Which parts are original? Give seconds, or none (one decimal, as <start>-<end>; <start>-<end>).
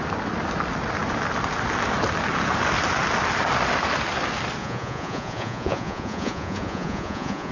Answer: 0.0-4.6